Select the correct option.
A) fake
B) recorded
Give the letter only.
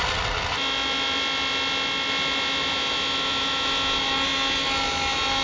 B